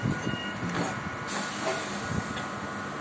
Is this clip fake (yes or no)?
no